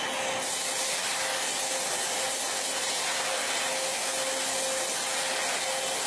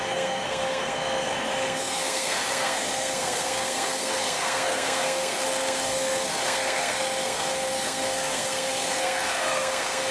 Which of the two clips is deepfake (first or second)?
second